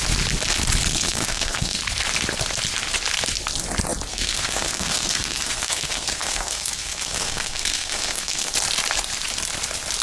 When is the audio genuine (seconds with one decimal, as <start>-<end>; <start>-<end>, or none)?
0.0-0.9; 1.8-4.1; 8.5-10.0